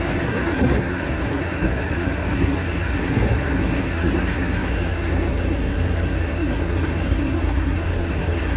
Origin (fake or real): fake